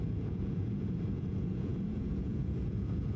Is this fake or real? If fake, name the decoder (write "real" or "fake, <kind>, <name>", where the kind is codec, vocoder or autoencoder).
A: fake, vocoder, Vocos